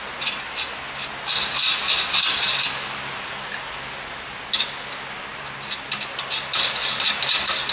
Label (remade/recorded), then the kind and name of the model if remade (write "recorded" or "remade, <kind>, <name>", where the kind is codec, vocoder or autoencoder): recorded